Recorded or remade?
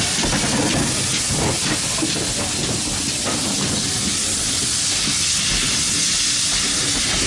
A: recorded